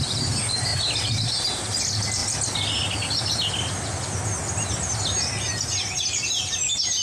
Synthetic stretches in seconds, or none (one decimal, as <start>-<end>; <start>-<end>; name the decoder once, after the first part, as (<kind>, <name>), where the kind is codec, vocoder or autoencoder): none